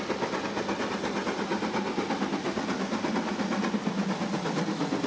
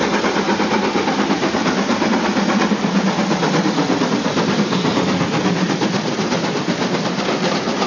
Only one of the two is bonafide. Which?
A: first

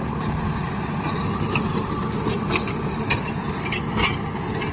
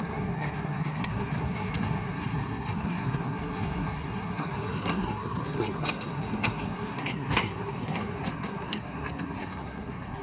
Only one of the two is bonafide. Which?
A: first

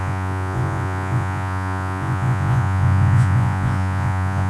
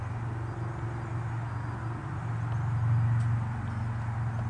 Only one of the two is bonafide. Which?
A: second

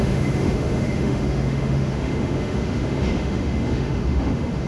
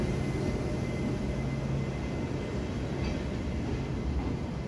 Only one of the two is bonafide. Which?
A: second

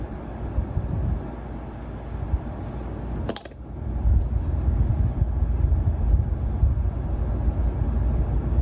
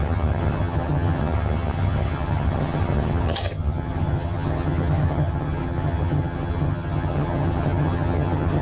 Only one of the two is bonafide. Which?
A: first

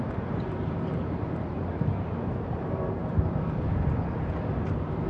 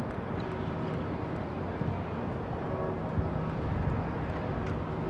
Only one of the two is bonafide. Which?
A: second